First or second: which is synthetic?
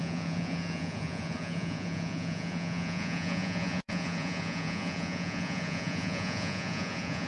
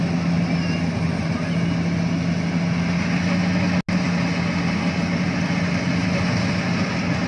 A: first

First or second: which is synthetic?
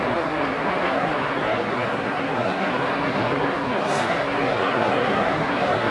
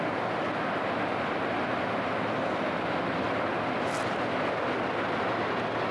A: first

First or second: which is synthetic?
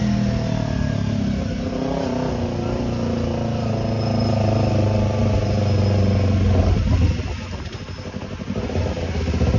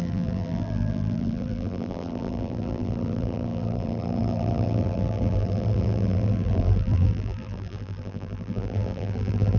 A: second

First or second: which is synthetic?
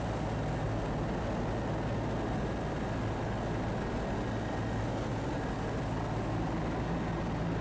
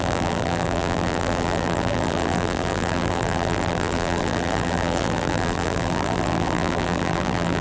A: second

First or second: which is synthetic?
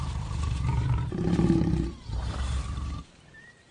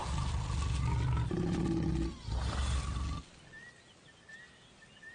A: first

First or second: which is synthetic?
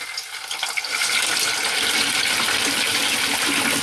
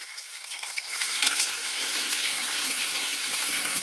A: second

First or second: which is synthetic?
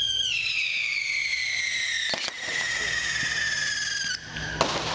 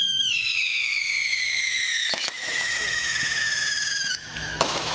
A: second